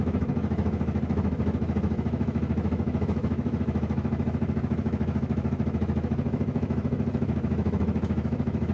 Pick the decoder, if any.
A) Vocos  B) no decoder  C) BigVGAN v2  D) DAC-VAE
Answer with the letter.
D